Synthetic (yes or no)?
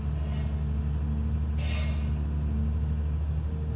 no